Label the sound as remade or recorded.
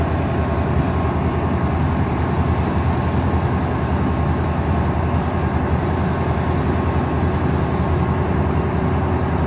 recorded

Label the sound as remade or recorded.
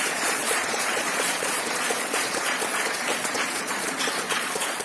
remade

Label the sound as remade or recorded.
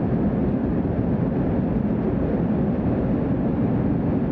recorded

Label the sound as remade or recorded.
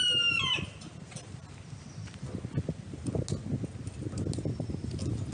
recorded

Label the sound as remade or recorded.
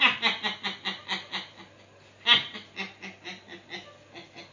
recorded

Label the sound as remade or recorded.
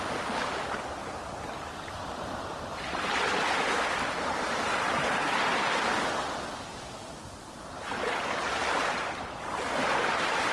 recorded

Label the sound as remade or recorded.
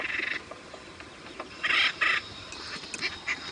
recorded